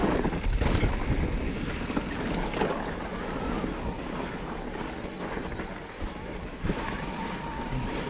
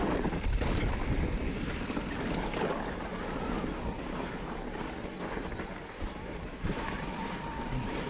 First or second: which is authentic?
first